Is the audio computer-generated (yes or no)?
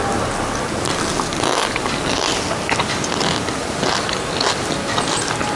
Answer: no